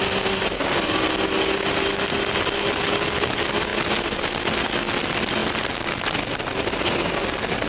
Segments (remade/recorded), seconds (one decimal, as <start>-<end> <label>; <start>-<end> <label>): 0.0-7.7 recorded